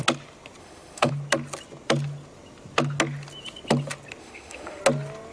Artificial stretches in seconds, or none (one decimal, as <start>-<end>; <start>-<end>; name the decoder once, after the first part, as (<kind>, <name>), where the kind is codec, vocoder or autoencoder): 0.6-1.1 (autoencoder, DAC-VAE); 4.2-4.8